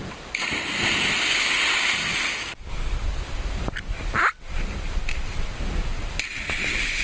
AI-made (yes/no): no